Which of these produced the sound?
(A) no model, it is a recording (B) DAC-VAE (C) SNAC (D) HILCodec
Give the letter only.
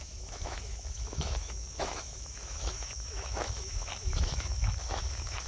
B